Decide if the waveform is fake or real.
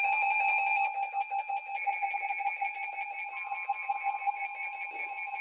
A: real